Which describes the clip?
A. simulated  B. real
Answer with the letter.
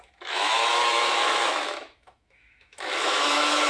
A